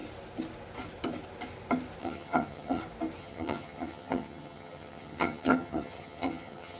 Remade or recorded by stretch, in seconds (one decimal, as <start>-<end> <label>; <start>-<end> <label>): 0.0-2.0 recorded; 2.0-2.8 remade; 2.8-3.2 recorded; 3.2-6.8 remade

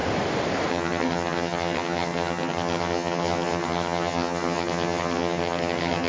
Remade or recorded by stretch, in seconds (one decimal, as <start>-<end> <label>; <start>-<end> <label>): 0.0-0.7 recorded; 0.7-6.1 remade

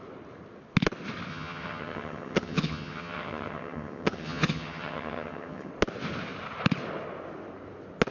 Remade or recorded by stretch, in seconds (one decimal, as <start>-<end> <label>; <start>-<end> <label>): 0.0-1.3 recorded; 1.3-5.7 remade; 5.7-8.1 recorded

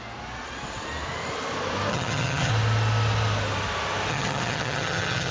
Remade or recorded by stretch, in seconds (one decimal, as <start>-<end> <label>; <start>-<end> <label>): 0.0-1.9 recorded; 1.9-2.5 remade; 2.5-4.1 recorded; 4.1-5.3 remade

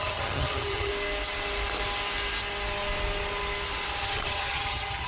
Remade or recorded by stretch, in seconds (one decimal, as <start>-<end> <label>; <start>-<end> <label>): 0.0-0.9 remade; 0.9-4.0 recorded; 4.0-5.1 remade